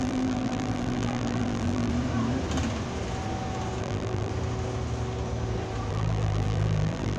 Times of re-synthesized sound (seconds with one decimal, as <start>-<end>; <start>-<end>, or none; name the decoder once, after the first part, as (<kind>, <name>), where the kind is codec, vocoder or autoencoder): 0.0-1.9 (vocoder, BigVGAN v2); 3.8-4.3; 5.9-7.2